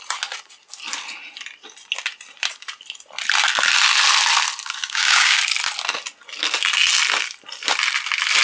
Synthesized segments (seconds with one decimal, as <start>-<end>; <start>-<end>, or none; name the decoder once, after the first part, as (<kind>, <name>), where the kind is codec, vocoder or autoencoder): 4.8-5.4 (codec, DAC)